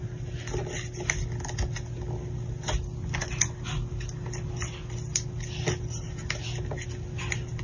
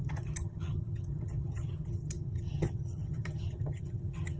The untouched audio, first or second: first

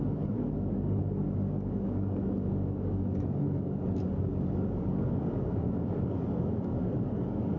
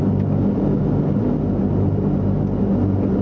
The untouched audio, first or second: second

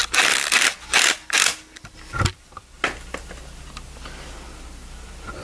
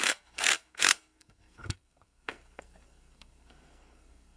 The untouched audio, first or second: first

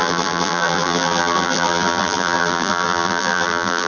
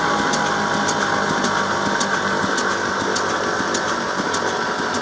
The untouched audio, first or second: second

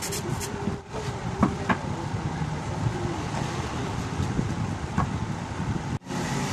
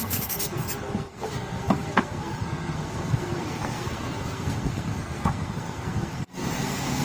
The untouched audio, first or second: first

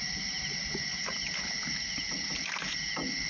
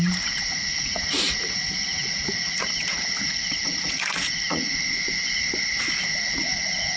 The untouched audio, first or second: first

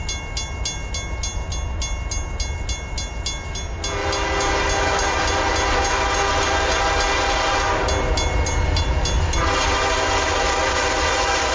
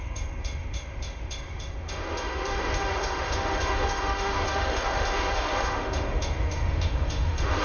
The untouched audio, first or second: first